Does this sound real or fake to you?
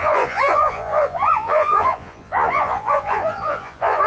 fake